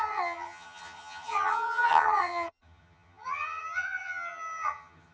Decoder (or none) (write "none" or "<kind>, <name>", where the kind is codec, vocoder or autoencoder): vocoder, HiFi-GAN